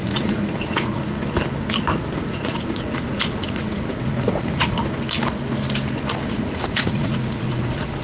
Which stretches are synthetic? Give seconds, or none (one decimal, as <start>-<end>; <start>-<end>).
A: 0.0-1.0; 2.1-4.8; 6.3-8.0